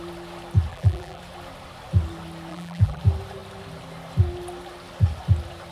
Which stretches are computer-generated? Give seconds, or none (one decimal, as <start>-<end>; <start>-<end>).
0.7-1.2; 2.5-3.0